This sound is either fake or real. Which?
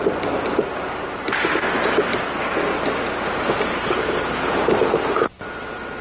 real